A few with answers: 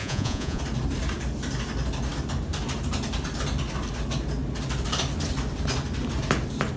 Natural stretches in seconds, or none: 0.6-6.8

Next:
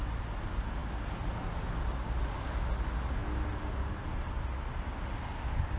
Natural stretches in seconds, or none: 0.0-5.8

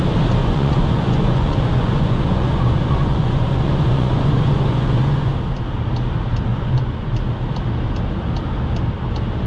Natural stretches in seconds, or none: 0.0-0.4; 5.3-6.5; 7.1-9.5

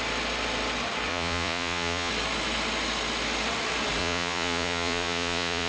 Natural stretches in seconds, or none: 0.0-1.1; 2.1-4.0

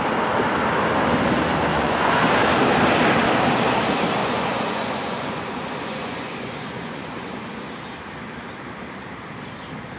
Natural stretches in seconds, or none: 0.0-1.7; 2.2-4.2; 7.6-10.0